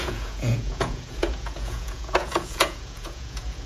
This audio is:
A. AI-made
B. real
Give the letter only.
A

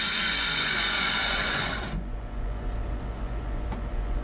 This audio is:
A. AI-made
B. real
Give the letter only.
A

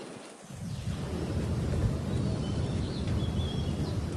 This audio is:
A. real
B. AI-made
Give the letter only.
A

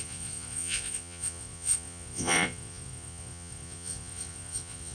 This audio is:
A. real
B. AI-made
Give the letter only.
B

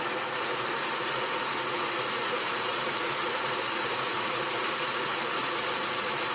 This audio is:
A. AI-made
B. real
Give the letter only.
A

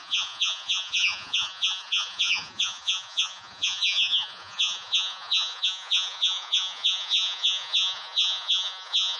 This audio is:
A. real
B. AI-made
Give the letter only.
B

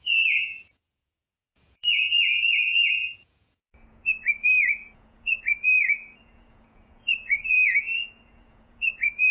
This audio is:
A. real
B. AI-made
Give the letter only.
B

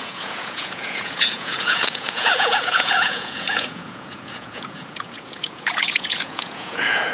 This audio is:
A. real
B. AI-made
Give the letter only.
B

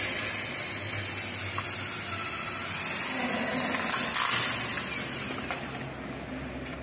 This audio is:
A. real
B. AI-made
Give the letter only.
A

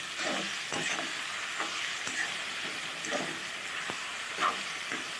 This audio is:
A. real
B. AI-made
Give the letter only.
A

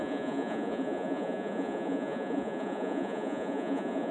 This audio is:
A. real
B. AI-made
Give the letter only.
B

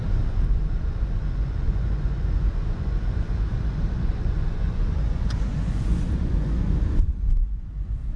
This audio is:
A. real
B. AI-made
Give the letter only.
B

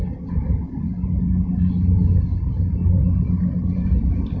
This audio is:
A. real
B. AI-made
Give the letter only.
A